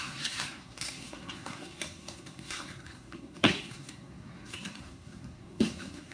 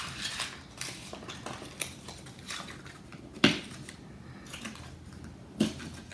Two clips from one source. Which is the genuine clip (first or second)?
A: second